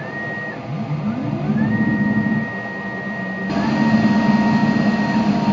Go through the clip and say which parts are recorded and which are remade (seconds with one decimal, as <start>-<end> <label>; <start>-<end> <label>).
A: 0.0-5.5 recorded

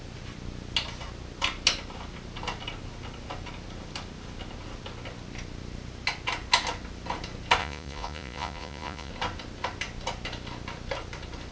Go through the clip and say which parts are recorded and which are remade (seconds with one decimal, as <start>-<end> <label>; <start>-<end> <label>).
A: 0.0-7.6 recorded; 7.6-9.1 remade; 9.1-11.5 recorded